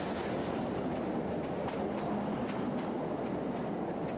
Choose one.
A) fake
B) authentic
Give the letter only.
B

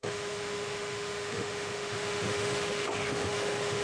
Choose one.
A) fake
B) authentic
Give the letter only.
A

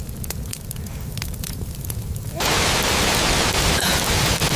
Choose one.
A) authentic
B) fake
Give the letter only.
A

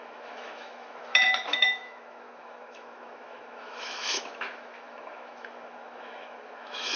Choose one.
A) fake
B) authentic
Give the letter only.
A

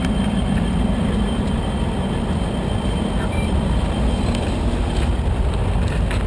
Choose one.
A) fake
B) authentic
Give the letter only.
B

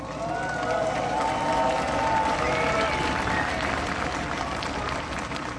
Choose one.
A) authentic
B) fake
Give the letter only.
A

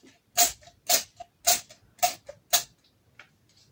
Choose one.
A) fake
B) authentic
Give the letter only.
B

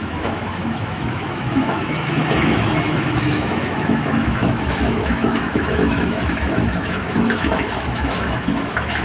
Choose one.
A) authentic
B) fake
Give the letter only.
B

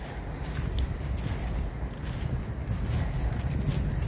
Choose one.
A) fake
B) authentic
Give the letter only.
B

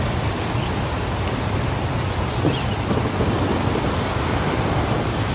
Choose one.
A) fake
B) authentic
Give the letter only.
B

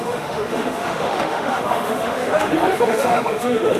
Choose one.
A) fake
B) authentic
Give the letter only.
A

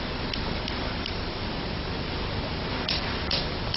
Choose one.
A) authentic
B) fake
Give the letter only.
A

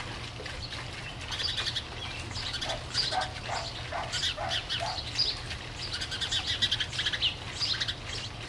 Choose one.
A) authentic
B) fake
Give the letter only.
A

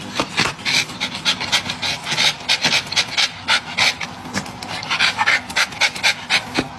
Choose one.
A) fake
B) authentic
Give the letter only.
B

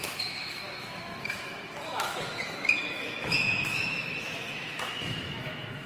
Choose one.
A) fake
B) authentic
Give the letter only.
A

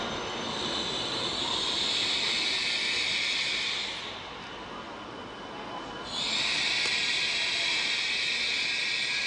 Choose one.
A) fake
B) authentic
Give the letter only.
B